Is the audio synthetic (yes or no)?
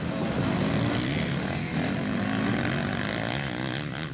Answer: no